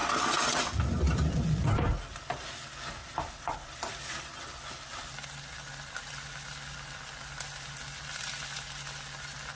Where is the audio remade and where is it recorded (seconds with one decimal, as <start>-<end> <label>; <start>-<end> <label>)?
0.0-3.0 recorded; 3.0-4.5 remade; 4.5-9.6 recorded